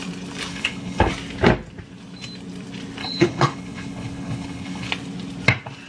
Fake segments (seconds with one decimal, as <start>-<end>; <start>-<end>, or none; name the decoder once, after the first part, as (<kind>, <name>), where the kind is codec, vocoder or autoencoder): 0.5-1.1 (codec, HILCodec); 3.0-4.9

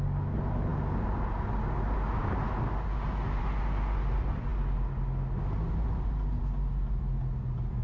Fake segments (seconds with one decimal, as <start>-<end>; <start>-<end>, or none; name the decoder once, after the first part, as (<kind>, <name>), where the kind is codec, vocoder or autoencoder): none

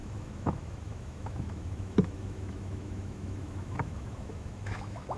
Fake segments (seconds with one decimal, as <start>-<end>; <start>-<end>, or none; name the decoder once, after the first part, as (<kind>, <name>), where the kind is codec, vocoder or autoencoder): 0.0-5.2 (autoencoder, DAC-VAE)

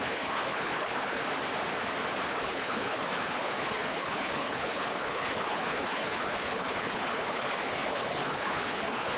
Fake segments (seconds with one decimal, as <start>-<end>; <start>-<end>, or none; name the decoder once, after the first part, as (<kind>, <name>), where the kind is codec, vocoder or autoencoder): 0.0-1.2 (codec, HILCodec); 2.3-9.2